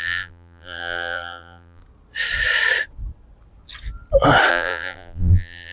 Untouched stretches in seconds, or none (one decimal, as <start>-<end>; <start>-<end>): 1.8-4.5